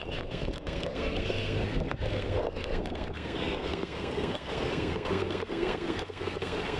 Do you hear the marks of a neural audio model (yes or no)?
yes